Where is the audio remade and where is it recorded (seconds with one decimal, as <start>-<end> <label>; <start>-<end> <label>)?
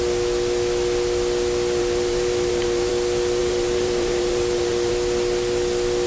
0.0-1.8 recorded; 1.8-2.9 remade; 2.9-3.4 recorded; 3.4-4.9 remade; 4.9-6.1 recorded